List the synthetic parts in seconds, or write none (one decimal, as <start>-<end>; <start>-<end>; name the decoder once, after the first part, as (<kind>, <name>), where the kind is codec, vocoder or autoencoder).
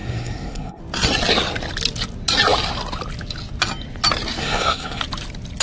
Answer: 0.0-0.8 (codec, SNAC); 4.4-5.0